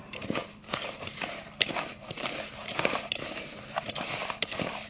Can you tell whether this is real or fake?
fake